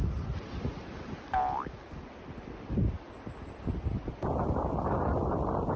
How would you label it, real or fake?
real